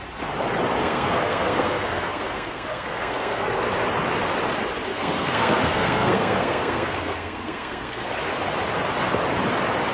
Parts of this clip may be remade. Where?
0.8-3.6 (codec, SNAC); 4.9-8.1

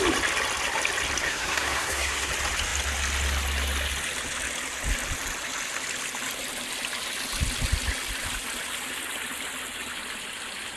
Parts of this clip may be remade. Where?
1.2-2.3 (codec, SNAC)

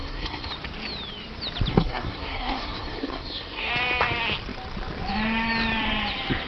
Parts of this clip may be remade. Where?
0.0-0.5 (codec, SNAC); 1.7-3.7

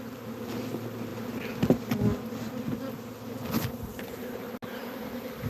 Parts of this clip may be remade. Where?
none

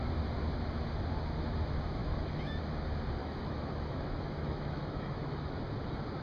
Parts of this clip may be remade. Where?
2.0-2.6 (autoencoder, DAC-VAE); 3.2-5.4

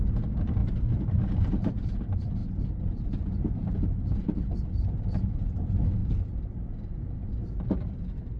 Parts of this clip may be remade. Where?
0.0-0.6 (vocoder, BigVGAN v2); 1.3-2.4; 3.4-8.4

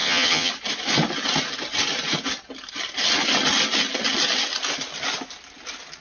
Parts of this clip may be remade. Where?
0.0-0.5 (vocoder, HiFi-GAN)